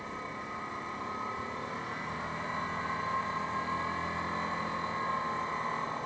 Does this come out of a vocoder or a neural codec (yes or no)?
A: no